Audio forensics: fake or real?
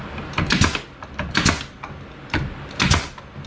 real